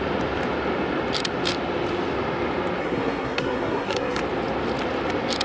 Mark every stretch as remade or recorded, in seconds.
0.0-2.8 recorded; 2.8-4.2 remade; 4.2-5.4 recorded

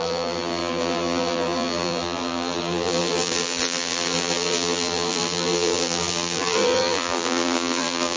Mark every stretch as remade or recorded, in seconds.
0.0-8.2 remade

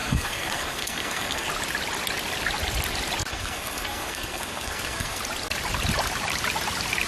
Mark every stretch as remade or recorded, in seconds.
0.0-1.5 remade; 1.5-3.3 recorded; 3.3-5.2 remade; 5.2-7.1 recorded

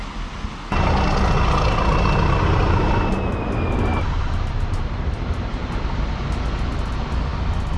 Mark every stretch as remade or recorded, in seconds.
0.0-3.9 recorded; 3.9-5.7 remade; 5.7-7.8 recorded